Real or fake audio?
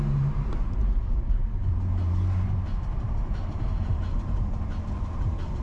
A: fake